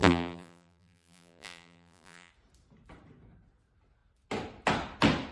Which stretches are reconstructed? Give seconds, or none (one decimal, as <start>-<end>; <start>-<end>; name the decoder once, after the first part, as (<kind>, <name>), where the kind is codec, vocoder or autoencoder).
0.0-2.3 (vocoder, BigVGAN v2)

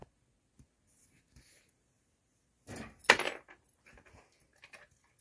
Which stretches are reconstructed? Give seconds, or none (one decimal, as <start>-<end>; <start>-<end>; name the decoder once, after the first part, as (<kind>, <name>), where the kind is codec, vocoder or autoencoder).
none

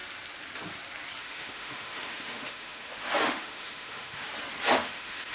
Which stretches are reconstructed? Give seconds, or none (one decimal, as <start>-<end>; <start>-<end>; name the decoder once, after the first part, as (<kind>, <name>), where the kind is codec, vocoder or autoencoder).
1.2-4.2 (autoencoder, DAC-VAE); 4.7-5.3

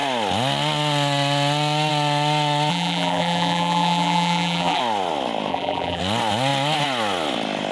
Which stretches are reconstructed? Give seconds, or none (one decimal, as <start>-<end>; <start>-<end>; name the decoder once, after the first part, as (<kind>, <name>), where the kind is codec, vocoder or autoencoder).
2.7-4.8 (vocoder, BigVGAN v2); 5.5-6.0

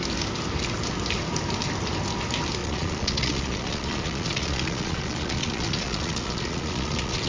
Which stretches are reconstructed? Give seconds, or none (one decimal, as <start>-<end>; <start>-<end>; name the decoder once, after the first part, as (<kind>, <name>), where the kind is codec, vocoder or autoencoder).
2.6-7.3 (vocoder, Vocos)

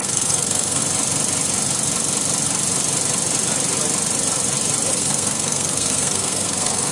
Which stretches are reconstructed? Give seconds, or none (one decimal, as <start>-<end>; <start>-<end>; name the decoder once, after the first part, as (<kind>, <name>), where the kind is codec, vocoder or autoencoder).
0.0-0.8 (codec, SNAC); 4.9-6.9

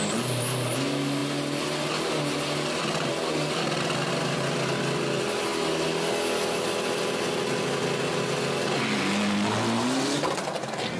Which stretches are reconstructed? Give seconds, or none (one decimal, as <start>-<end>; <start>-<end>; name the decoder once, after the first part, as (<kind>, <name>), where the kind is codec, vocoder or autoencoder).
none